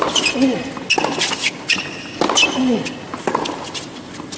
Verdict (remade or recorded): recorded